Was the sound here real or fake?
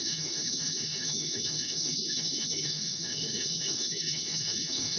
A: fake